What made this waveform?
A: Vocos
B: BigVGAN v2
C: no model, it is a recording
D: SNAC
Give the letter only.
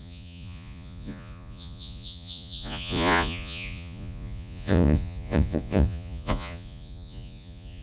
A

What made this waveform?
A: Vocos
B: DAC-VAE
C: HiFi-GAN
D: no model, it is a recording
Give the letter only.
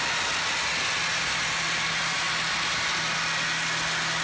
D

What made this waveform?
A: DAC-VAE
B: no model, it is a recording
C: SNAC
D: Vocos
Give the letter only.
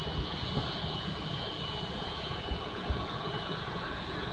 D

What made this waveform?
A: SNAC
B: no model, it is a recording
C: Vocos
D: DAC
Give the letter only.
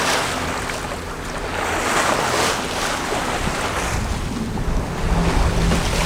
B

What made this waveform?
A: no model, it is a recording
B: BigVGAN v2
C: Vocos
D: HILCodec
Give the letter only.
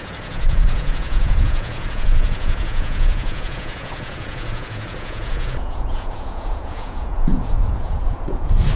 C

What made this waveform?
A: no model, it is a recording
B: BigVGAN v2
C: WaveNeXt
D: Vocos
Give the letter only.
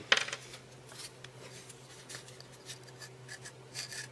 A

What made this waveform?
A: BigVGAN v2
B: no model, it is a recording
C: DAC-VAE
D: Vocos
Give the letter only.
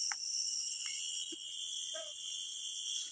D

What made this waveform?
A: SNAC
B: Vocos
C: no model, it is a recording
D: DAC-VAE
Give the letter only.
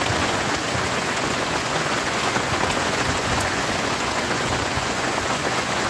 B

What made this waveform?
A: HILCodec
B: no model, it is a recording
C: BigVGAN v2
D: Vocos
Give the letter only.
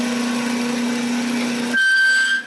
B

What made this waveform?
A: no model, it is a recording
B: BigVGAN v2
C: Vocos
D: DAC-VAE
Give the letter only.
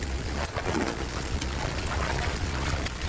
C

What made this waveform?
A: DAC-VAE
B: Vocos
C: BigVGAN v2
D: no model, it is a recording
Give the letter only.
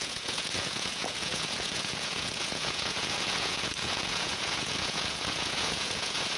B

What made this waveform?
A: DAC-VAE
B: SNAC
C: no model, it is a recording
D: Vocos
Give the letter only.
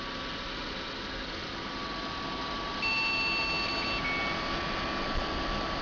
C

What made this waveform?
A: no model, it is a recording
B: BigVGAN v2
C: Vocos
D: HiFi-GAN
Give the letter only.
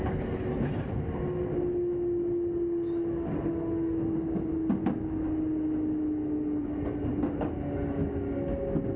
A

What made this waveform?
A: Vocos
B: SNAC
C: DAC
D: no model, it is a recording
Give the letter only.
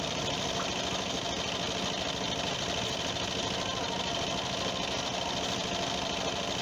D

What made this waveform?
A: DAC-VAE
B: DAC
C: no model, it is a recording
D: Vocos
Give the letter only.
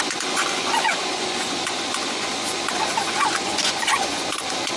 D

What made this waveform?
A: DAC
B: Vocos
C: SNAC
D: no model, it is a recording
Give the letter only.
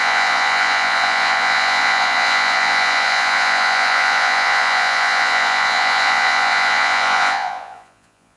B